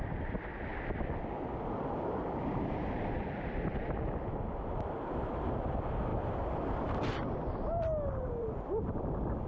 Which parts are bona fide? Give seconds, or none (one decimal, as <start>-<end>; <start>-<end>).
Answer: 0.0-0.7; 1.9-6.1; 8.9-9.5